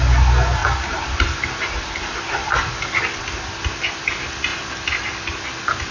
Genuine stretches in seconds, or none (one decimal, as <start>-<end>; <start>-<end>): 0.0-0.6; 4.1-5.9